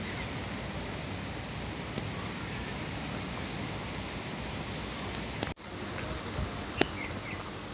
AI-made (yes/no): no